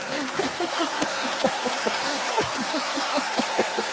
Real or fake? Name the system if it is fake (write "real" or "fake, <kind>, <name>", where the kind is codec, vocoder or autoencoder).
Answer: fake, codec, SNAC